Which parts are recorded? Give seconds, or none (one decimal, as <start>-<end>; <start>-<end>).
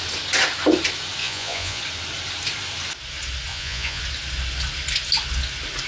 0.0-1.2; 1.8-3.5; 4.0-5.9